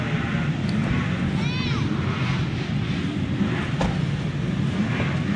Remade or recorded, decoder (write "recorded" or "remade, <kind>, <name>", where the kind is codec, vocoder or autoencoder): recorded